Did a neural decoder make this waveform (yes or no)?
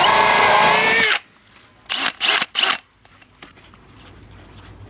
no